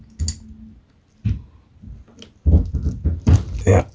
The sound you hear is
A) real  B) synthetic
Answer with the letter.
A